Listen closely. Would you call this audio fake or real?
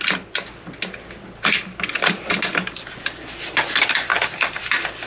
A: real